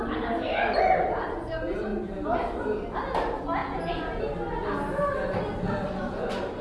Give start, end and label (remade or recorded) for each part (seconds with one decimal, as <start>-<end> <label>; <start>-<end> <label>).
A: 0.0-3.6 recorded; 3.6-4.2 remade; 4.2-6.6 recorded